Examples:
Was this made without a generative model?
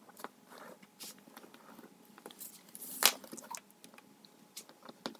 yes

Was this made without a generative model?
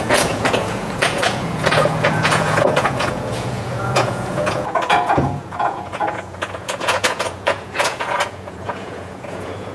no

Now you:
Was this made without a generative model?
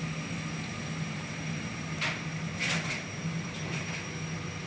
yes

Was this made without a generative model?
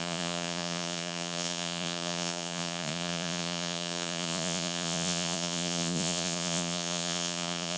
no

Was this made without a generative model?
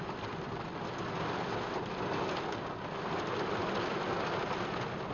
yes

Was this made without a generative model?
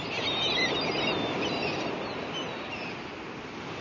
yes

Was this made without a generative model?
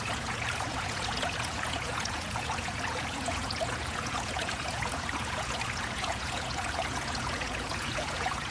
no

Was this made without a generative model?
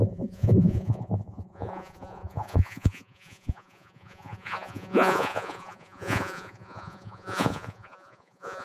no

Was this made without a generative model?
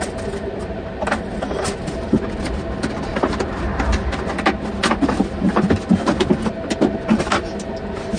yes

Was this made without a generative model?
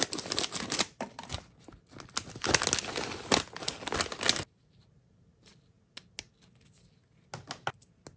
yes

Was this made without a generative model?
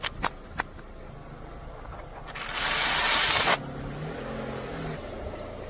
yes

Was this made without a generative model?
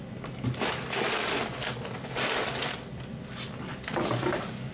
yes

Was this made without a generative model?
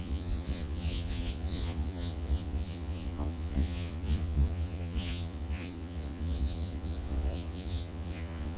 no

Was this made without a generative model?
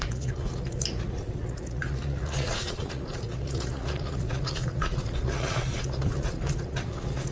no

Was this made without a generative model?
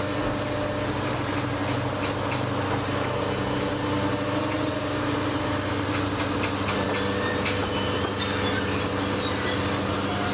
yes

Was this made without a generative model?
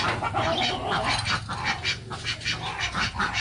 yes